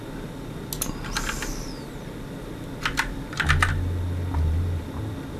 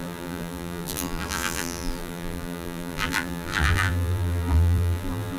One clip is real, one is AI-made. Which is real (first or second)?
first